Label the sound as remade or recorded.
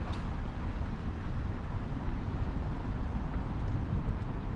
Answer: recorded